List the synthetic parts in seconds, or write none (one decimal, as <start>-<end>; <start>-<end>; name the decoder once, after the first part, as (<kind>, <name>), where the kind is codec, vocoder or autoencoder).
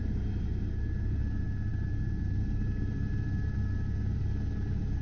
none